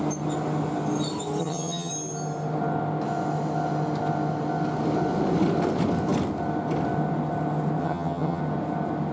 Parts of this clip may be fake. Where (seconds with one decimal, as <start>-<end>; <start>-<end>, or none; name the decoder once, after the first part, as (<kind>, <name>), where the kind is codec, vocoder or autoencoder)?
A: 1.4-1.9 (vocoder, HiFi-GAN); 7.8-8.4